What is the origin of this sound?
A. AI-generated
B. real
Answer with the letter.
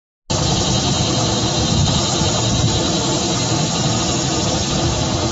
B